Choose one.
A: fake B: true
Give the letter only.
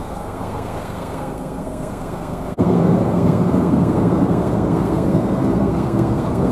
A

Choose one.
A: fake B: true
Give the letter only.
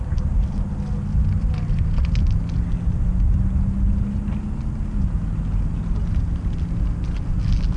B